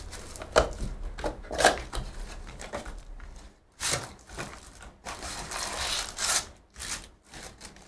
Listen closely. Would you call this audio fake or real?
real